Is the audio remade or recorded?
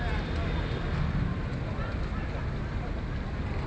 recorded